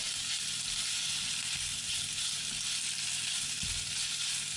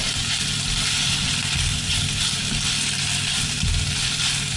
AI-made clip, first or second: second